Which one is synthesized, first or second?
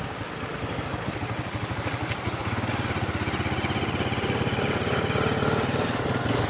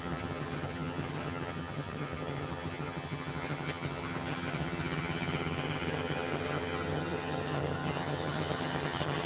second